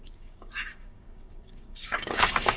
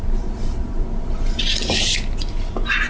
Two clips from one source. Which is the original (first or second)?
second